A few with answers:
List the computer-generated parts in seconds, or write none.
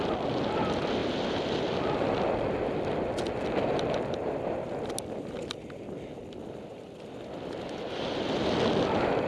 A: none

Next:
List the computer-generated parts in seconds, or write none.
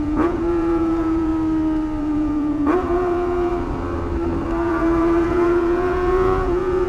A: 0.0-1.3 (vocoder, Vocos); 2.0-3.5; 4.6-6.9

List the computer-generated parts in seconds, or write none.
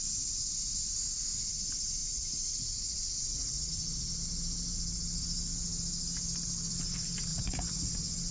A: 2.0-3.7 (vocoder, Vocos); 7.3-7.9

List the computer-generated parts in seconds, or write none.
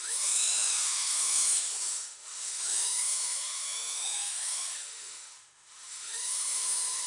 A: 0.0-7.1 (autoencoder, DAC-VAE)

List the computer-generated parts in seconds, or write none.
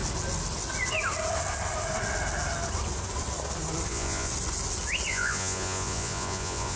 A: 3.9-4.3 (vocoder, Vocos); 5.1-6.8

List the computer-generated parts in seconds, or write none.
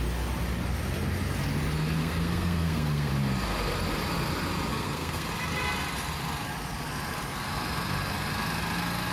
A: 2.0-3.1 (codec, SNAC); 4.7-5.3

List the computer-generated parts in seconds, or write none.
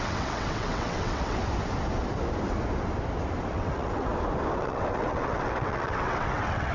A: 0.0-1.4 (vocoder, WaveNeXt); 3.5-4.1; 4.6-6.7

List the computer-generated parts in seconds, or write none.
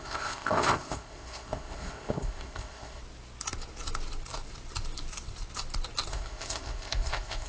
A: 0.0-3.0 (codec, ZipCodec); 6.1-7.5